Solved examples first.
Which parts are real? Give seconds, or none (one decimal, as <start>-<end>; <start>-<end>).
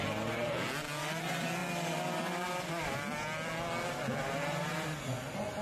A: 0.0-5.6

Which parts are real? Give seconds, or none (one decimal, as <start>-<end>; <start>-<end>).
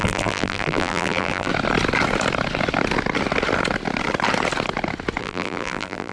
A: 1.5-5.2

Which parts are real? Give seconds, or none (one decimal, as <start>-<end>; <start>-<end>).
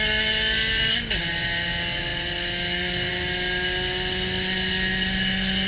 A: 0.0-5.7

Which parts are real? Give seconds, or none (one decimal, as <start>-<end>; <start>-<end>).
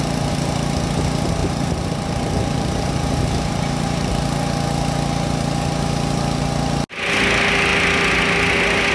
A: 0.0-1.4; 4.1-8.9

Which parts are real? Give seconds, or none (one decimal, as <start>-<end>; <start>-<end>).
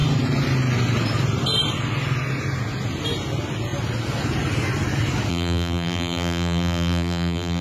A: 0.0-5.3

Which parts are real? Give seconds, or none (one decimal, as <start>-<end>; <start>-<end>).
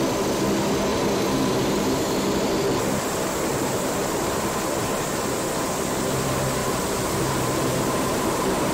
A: 0.0-0.9; 2.5-3.5; 4.3-6.6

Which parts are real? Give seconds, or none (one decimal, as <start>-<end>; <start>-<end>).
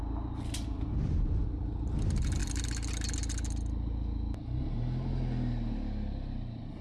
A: 0.0-6.8